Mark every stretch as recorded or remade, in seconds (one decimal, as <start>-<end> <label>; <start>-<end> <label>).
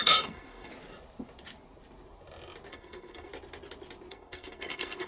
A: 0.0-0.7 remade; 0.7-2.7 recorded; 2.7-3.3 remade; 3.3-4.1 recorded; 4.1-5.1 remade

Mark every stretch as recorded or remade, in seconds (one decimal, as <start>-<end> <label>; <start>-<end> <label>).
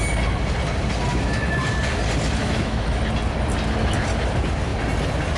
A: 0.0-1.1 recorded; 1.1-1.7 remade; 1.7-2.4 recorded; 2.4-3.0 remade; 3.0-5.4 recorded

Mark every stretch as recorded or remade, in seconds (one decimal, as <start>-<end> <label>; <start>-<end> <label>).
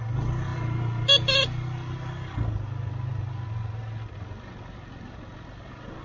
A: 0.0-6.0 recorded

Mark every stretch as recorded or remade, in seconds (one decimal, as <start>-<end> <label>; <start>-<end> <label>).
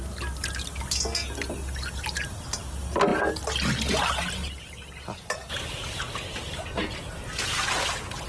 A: 0.0-8.3 recorded